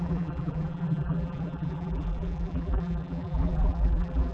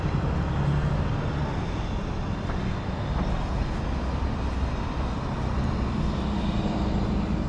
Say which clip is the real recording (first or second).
second